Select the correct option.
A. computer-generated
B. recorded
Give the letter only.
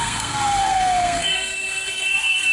A